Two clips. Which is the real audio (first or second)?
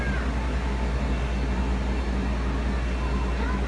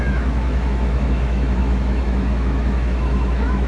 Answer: first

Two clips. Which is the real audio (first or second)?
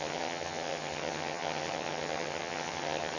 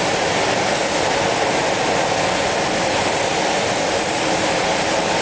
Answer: second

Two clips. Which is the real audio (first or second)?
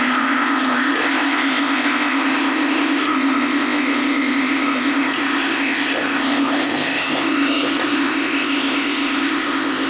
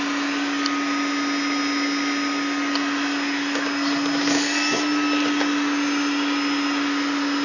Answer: second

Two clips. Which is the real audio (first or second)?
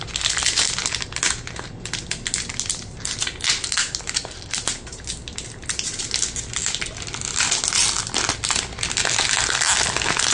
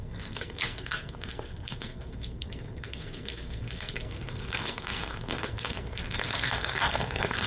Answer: first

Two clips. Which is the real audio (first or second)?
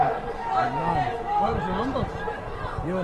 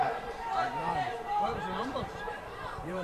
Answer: first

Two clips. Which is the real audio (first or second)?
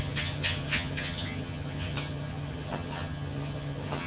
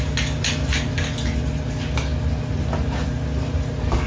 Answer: second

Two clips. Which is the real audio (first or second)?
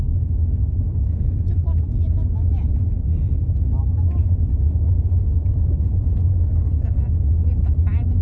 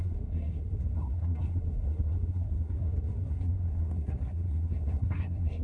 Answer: first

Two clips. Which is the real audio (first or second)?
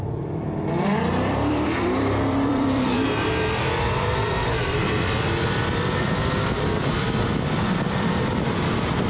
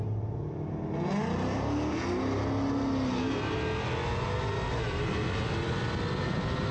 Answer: second